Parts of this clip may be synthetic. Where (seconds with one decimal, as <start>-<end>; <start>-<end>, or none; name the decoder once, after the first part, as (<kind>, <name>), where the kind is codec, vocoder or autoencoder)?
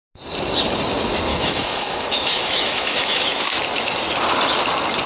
1.3-3.4 (autoencoder, DAC-VAE)